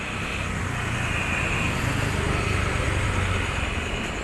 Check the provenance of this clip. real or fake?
real